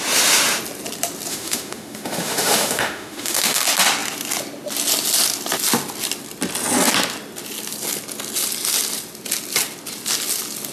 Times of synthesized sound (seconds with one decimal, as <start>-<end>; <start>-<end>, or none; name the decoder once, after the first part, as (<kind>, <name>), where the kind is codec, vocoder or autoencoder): 1.3-3.6 (autoencoder, DAC-VAE)